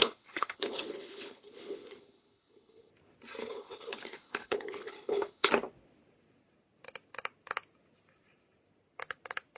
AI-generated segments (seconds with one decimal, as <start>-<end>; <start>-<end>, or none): 0.0-2.9; 3.4-5.5